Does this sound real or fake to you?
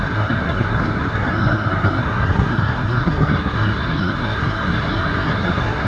fake